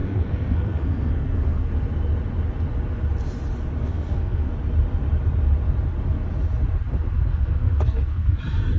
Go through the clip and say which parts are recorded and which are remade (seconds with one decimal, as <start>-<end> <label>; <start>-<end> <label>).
0.0-1.7 remade; 1.7-3.8 recorded; 3.8-4.5 remade; 4.5-7.3 recorded; 7.3-8.4 remade; 8.4-8.8 recorded